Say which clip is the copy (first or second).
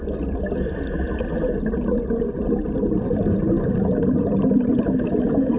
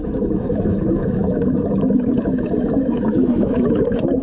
second